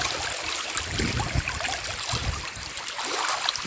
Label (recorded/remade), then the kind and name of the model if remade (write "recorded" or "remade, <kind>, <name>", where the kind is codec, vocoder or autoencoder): recorded